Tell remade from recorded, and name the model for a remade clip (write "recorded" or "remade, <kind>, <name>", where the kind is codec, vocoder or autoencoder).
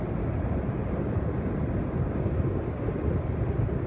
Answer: recorded